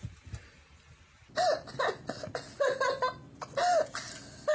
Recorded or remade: recorded